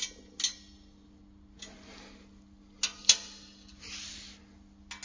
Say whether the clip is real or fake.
real